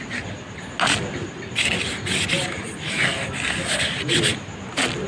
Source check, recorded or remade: recorded